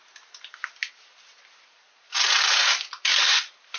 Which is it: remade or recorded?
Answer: recorded